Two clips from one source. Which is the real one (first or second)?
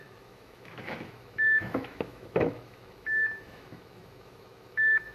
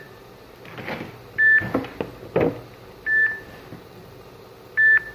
second